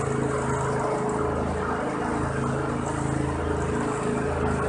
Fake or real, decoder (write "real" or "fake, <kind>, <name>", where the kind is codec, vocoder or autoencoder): real